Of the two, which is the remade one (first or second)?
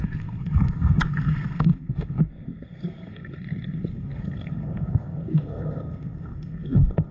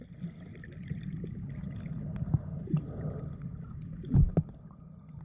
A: first